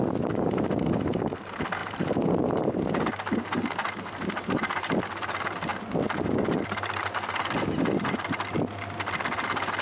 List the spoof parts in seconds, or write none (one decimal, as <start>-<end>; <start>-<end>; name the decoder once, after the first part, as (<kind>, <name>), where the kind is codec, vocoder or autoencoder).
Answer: 1.8-2.7 (vocoder, BigVGAN v2)